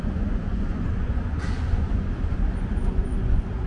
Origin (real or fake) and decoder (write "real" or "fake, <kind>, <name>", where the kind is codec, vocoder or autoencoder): fake, vocoder, Vocos